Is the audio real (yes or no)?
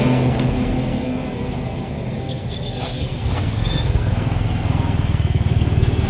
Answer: no